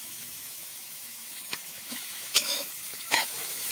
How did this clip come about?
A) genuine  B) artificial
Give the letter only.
B